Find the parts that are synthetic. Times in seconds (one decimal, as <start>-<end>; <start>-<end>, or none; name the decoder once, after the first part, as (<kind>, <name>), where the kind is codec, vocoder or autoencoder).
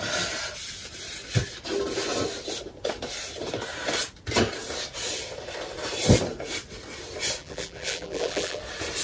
7.4-8.6 (vocoder, BigVGAN v2)